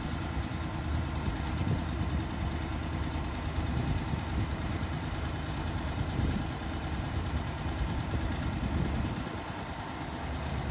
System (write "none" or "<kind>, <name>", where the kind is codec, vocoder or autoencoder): vocoder, BigVGAN v2